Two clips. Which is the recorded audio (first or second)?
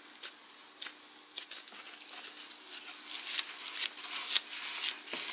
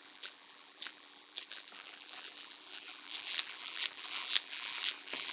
first